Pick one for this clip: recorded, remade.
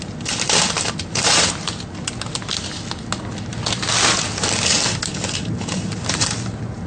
recorded